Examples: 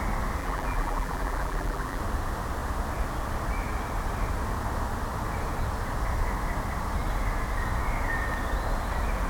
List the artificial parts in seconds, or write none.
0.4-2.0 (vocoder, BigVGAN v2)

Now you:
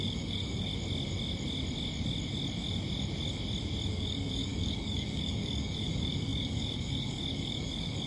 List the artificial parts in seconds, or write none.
0.0-0.7 (codec, DAC); 3.9-8.1

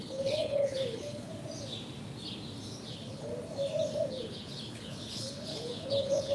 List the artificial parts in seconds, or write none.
0.0-1.3 (codec, HILCodec); 2.9-3.3; 4.1-6.3